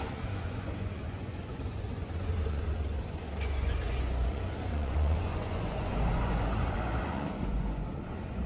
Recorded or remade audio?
remade